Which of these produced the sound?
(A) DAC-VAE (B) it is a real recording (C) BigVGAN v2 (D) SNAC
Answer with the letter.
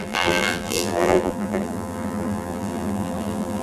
C